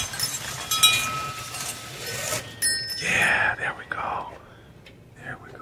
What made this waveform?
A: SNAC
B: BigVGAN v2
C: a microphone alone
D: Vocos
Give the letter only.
C